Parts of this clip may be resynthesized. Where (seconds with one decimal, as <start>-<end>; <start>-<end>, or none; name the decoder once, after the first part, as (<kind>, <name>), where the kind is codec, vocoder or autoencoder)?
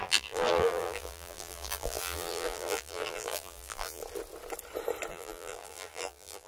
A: 0.0-4.0 (vocoder, BigVGAN v2); 5.1-6.5